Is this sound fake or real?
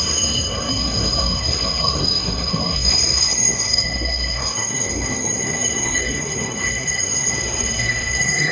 fake